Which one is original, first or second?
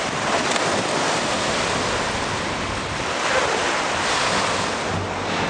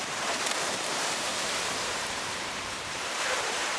first